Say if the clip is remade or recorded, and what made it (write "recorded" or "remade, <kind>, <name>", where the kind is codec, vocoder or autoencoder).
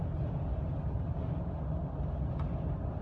recorded